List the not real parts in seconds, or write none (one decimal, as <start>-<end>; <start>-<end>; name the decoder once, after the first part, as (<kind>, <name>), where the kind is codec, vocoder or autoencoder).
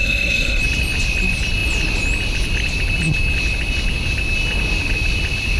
0.0-0.6 (codec, SNAC)